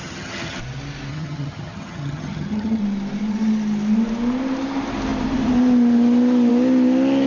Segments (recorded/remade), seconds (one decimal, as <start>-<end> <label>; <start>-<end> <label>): 0.0-0.6 remade; 0.6-1.1 recorded; 1.1-2.8 remade; 2.8-7.3 recorded